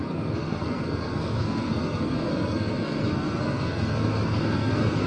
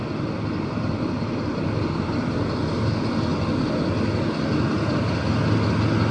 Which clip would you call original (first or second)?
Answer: second